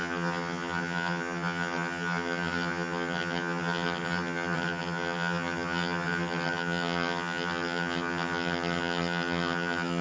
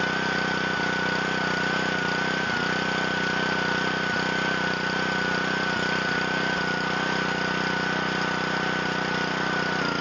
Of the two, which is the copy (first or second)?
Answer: first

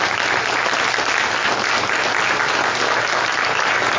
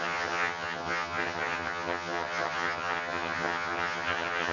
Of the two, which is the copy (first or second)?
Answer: second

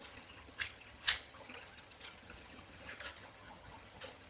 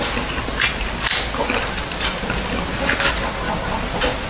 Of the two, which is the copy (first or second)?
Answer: first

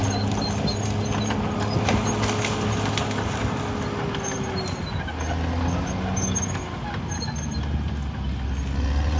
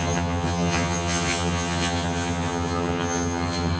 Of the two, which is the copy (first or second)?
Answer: second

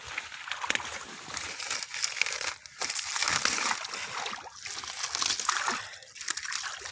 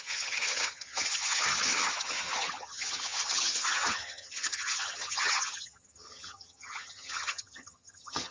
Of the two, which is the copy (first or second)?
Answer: second